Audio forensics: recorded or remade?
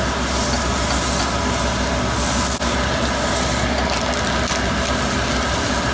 recorded